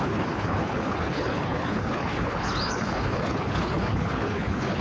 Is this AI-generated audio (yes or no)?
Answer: yes